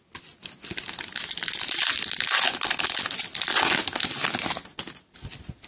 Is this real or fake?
real